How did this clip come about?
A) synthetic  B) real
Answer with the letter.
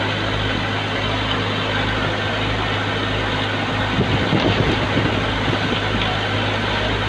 B